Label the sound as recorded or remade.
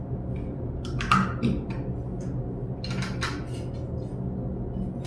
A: recorded